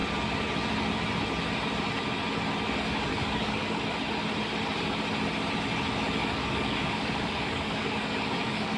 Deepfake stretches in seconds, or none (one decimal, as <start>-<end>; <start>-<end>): 3.1-3.8; 6.2-8.8